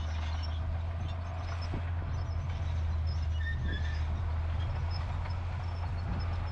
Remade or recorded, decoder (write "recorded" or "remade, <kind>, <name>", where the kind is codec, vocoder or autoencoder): recorded